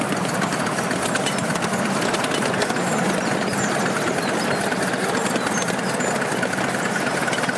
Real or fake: real